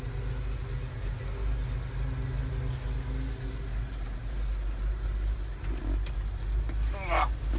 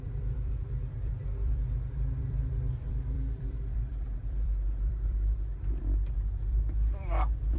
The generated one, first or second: second